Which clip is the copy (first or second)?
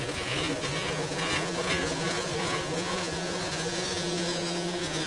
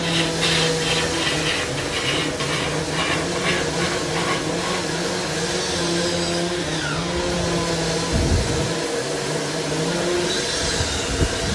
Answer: first